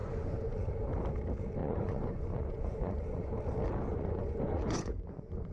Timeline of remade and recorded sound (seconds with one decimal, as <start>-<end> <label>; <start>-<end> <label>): 0.0-0.7 remade; 0.7-1.6 recorded; 1.6-3.3 remade; 3.3-3.9 recorded; 3.9-5.5 remade

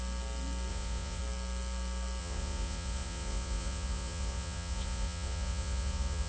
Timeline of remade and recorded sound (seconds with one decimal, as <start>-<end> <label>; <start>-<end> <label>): 0.0-0.7 recorded; 0.7-1.2 remade; 1.2-2.2 recorded; 2.2-6.3 remade

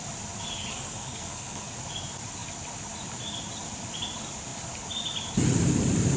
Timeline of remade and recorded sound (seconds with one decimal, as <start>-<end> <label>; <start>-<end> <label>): 0.0-0.7 recorded; 0.7-1.7 remade; 1.7-6.2 recorded

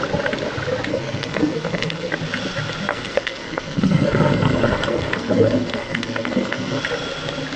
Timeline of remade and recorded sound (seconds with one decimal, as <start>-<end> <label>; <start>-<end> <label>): 0.0-0.9 recorded; 0.9-2.1 remade; 2.1-2.9 recorded; 2.9-6.8 remade; 6.8-7.6 recorded

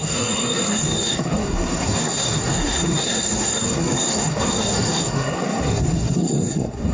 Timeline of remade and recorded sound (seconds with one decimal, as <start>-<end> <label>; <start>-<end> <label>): 0.0-6.9 remade